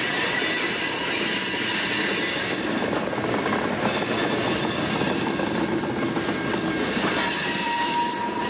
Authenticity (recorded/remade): remade